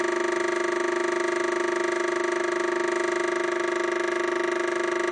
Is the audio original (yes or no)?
yes